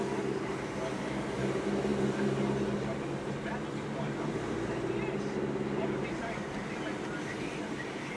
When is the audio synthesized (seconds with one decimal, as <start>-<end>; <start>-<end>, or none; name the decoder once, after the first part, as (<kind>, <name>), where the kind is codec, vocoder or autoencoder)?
none